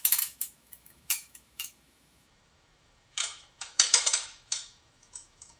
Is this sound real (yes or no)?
no